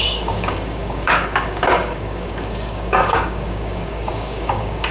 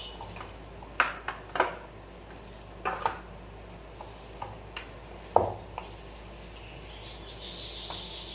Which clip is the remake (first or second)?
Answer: first